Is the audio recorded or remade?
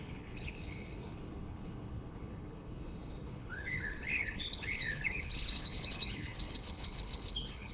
remade